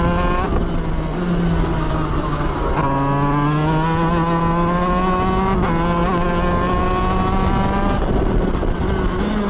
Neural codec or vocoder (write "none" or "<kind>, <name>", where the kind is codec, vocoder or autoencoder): none